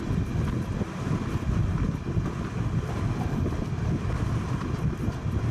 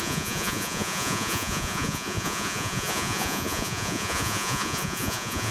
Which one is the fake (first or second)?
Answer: second